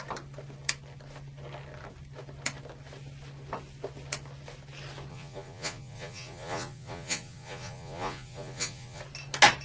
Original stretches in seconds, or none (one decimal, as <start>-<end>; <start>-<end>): 0.0-5.1; 9.0-9.6